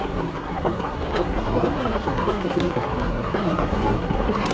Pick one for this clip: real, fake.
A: fake